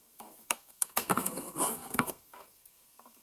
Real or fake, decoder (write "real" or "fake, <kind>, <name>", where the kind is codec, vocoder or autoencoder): fake, codec, SNAC